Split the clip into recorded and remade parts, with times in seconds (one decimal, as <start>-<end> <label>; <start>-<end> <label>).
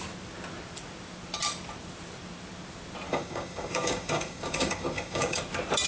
0.0-3.1 recorded; 3.1-5.4 remade; 5.4-5.9 recorded